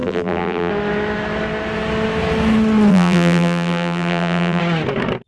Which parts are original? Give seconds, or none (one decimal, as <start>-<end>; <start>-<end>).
0.7-2.9; 4.6-5.3